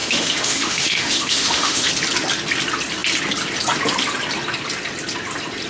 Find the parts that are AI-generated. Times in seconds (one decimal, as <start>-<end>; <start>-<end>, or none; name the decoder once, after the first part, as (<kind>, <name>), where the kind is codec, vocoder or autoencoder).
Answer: 0.0-1.9 (autoencoder, DAC-VAE)